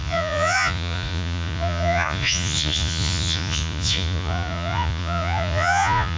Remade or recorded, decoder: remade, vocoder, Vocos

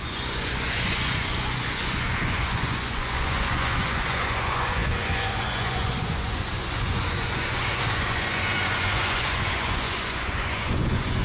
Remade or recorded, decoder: remade, vocoder, Vocos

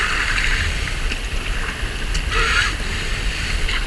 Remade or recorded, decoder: recorded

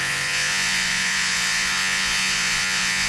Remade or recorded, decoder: remade, vocoder, Vocos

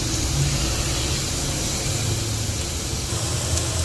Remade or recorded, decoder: recorded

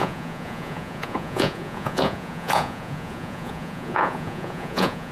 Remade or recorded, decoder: remade, vocoder, Vocos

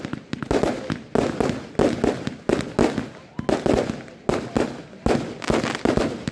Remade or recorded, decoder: recorded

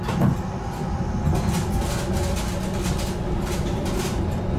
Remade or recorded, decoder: recorded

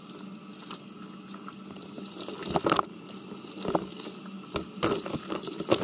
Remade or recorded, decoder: recorded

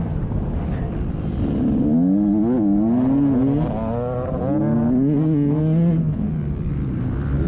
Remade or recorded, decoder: recorded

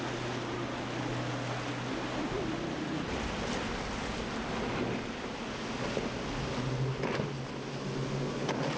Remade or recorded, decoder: recorded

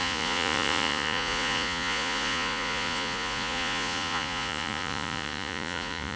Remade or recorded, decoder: remade, vocoder, Vocos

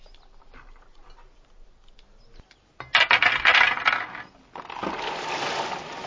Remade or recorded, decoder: recorded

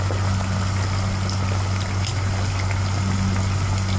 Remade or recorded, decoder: recorded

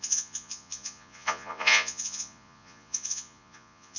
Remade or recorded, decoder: remade, vocoder, Vocos